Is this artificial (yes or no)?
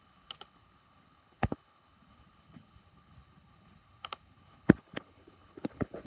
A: yes